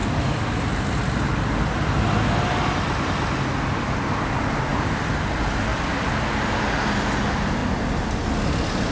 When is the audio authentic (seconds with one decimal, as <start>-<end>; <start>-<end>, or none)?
2.0-4.7; 5.3-5.7; 6.6-7.6; 8.4-8.9